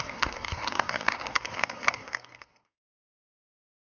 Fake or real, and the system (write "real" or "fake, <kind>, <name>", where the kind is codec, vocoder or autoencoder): fake, codec, SNAC